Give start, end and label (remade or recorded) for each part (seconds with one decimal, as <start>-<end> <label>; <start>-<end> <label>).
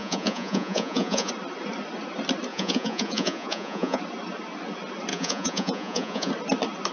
0.0-1.3 remade; 1.3-2.5 recorded; 2.5-4.0 remade; 4.0-5.1 recorded; 5.1-6.3 remade; 6.3-6.9 recorded